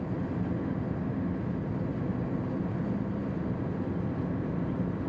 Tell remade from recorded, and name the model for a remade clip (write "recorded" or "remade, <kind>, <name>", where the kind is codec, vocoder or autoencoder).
recorded